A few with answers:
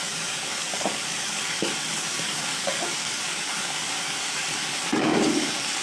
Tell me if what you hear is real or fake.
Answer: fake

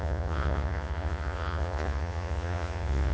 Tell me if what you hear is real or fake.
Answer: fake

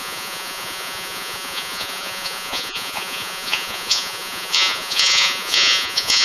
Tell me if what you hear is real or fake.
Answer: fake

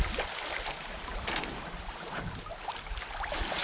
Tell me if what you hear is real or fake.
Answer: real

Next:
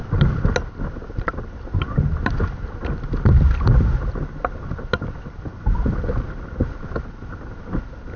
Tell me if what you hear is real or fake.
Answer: real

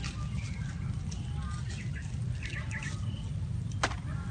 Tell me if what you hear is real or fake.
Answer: real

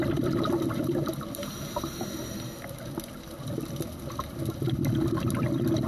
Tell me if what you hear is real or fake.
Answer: real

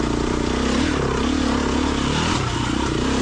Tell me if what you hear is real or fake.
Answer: real